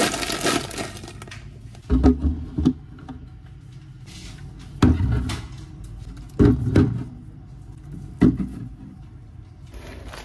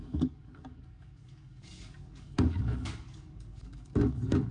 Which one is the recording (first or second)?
first